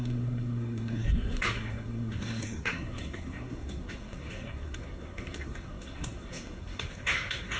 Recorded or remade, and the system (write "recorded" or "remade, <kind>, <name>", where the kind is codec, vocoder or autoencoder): remade, codec, SNAC